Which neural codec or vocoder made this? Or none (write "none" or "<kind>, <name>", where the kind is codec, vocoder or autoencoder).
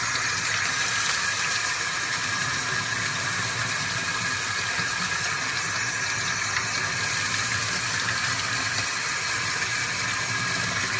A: none